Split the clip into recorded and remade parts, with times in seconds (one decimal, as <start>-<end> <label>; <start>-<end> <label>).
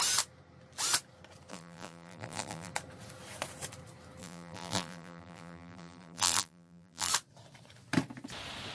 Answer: 0.0-1.5 recorded; 1.5-2.7 remade; 2.7-4.2 recorded; 4.2-7.1 remade; 7.1-8.7 recorded